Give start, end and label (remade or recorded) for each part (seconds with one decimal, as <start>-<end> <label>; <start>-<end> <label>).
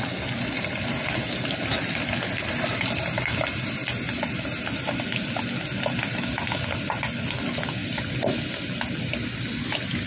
0.0-10.1 recorded